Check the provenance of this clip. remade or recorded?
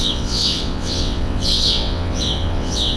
remade